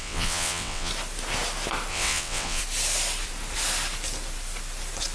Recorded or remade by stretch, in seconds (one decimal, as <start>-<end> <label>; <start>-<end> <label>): 0.0-0.9 remade; 0.9-1.9 recorded; 1.9-2.6 remade; 2.6-5.1 recorded